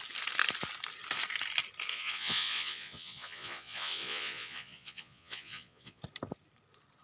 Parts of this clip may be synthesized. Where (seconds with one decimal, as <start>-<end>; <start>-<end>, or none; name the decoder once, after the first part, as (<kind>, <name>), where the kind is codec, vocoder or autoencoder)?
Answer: 1.9-6.0 (vocoder, Vocos)